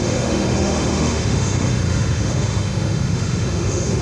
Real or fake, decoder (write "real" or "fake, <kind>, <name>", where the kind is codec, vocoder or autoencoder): fake, autoencoder, DAC-VAE